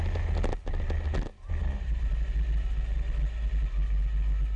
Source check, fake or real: real